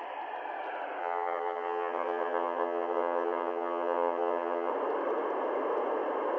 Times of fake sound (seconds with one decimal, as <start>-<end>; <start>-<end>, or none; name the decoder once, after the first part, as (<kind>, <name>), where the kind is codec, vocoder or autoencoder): 1.0-4.7 (vocoder, HiFi-GAN)